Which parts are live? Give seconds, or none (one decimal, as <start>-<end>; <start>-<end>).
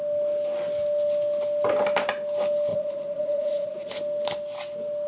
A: 0.0-2.7; 4.0-5.1